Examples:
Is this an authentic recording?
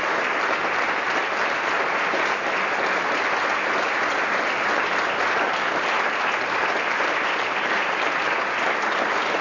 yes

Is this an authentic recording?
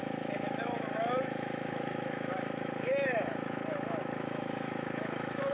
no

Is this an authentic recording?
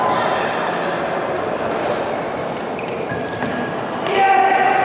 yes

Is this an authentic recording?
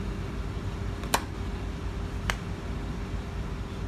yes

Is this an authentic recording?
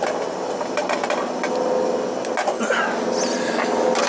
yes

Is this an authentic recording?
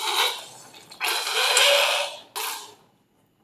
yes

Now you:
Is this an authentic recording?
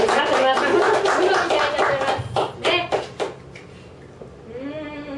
yes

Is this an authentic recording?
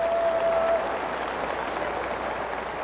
yes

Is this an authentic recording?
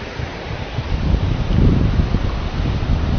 yes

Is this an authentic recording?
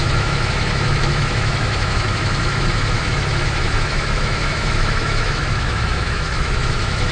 no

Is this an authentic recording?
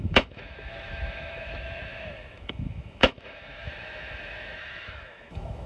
no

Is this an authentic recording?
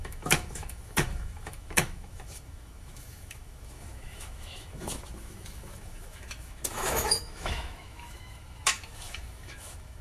no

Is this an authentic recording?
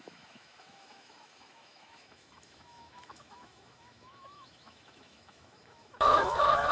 no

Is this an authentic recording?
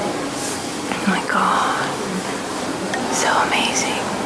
yes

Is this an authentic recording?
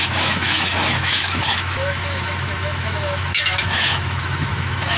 no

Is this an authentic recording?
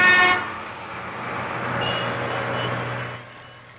yes